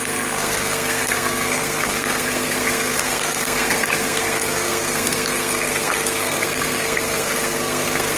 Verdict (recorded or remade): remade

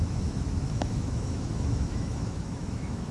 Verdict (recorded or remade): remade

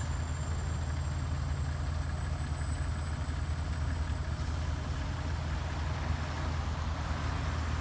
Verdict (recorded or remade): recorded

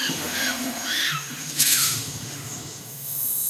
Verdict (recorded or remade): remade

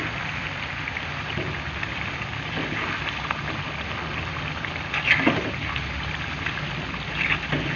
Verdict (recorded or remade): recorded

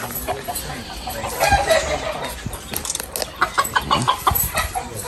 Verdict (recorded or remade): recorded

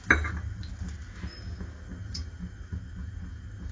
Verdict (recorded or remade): recorded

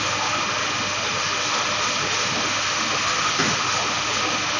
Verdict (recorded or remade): recorded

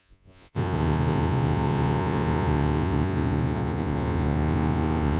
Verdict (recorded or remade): remade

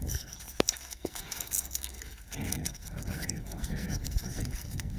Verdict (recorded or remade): remade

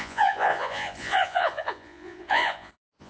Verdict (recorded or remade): remade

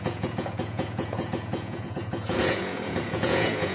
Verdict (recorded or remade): remade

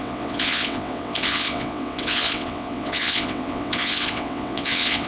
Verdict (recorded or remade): remade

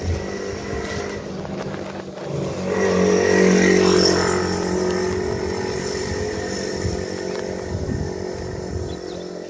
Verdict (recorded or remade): recorded